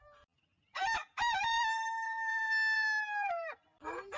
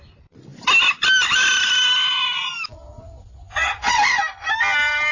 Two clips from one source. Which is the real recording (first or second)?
second